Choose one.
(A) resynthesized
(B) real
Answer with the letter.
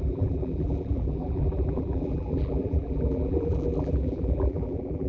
A